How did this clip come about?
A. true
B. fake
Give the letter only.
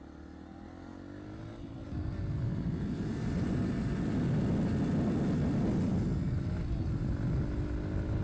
A